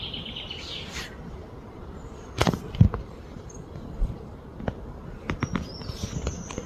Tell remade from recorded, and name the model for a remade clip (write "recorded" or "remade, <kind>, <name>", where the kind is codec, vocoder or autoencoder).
remade, vocoder, BigVGAN v2